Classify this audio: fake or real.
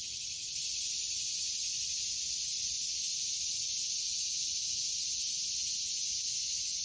real